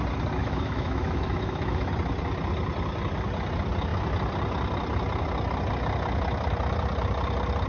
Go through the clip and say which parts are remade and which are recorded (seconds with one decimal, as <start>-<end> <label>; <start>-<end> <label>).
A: 0.0-0.4 recorded; 0.4-1.9 remade; 1.9-7.7 recorded

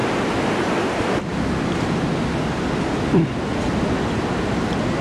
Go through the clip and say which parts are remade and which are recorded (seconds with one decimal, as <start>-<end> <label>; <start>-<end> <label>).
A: 0.0-5.0 recorded

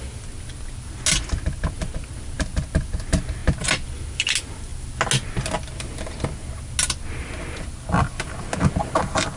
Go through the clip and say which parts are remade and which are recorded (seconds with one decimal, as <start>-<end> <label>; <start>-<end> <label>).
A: 0.0-9.4 recorded

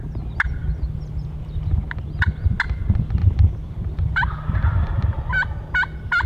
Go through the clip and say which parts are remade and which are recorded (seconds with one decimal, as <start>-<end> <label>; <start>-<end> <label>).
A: 0.0-3.2 recorded; 3.2-4.3 remade; 4.3-6.3 recorded

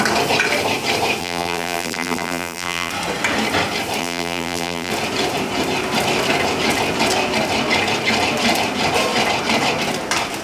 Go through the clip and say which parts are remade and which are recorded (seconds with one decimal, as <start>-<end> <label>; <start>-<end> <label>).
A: 0.0-1.2 recorded; 1.2-2.9 remade; 2.9-4.0 recorded; 4.0-4.9 remade; 4.9-10.4 recorded

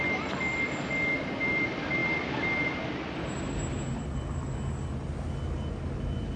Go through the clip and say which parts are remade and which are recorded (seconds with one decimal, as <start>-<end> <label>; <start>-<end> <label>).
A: 0.0-6.4 recorded

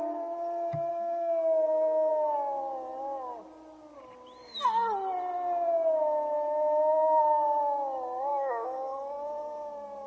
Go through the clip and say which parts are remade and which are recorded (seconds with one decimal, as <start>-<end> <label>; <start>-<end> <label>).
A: 0.0-0.9 recorded; 0.9-2.1 remade; 2.1-8.3 recorded; 8.3-9.3 remade; 9.3-10.1 recorded